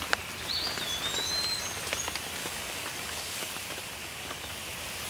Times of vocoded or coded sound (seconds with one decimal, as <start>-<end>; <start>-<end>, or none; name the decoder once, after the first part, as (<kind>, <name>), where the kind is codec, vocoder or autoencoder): 2.4-3.5 (codec, DAC); 4.0-4.5